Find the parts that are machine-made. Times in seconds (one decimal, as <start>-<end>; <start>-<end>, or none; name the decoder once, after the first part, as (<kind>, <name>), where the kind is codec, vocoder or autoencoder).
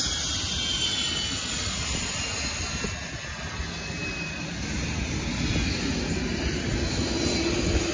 none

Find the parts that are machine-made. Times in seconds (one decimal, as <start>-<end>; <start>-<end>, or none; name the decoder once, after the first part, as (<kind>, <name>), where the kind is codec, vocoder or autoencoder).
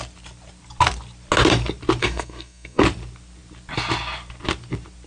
2.0-2.8 (codec, SNAC)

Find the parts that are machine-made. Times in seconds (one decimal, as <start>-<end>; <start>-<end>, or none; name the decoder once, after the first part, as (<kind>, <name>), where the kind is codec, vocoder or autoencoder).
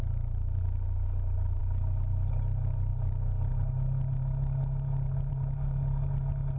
none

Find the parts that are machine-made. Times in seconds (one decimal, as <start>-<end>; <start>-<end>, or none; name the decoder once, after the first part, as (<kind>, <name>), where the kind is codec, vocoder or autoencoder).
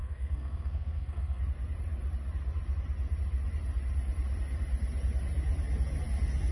0.0-1.4 (codec, SNAC)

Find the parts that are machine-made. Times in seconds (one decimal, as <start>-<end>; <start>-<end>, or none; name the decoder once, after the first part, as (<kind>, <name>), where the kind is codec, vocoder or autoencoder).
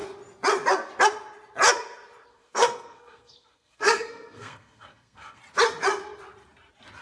2.3-5.4 (codec, SNAC)